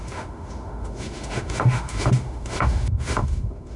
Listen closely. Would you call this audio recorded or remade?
remade